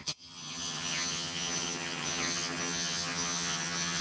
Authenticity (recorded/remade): remade